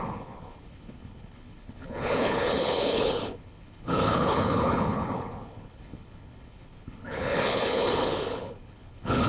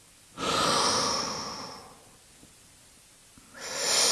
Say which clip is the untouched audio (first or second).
second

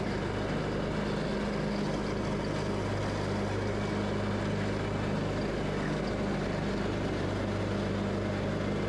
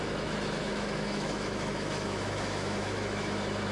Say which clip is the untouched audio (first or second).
first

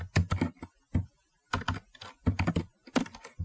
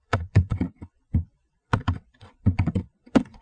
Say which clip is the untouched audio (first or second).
first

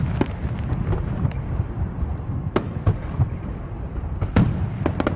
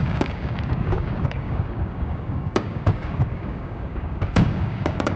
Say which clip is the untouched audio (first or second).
first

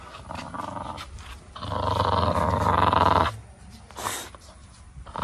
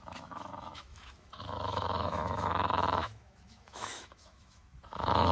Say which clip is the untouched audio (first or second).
first